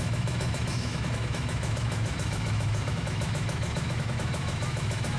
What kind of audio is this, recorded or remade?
remade